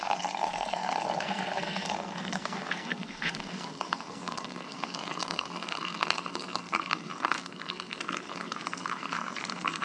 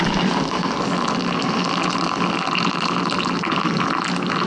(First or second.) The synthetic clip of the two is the first